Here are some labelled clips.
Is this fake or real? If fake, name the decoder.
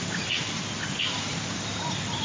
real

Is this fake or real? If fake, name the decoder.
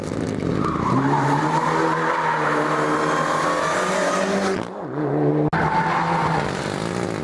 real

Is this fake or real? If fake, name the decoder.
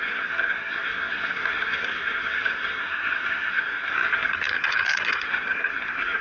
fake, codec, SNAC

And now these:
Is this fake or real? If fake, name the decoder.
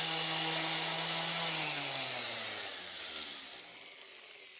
real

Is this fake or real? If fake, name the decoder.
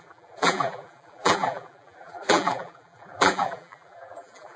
fake, vocoder, BigVGAN v2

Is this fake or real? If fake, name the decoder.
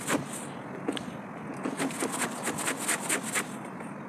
real